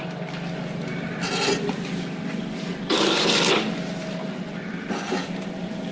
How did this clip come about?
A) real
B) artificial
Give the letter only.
A